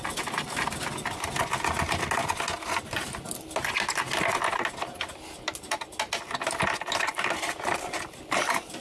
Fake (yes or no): no